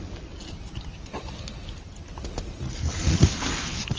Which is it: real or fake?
real